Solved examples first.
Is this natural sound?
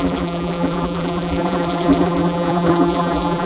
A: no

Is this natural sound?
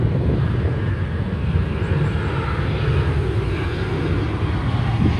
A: yes